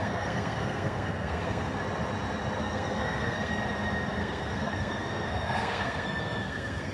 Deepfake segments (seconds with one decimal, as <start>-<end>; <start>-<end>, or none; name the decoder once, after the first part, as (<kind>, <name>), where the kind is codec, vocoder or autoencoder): 0.0-1.8 (codec, SNAC); 2.6-3.6; 4.2-6.9